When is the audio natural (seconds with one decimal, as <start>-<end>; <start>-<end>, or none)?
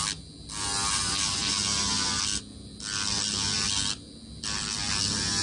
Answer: 0.0-5.4